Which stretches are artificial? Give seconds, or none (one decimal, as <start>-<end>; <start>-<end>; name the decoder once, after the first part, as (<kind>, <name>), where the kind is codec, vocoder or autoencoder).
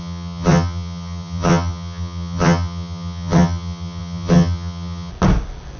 0.0-5.1 (vocoder, HiFi-GAN)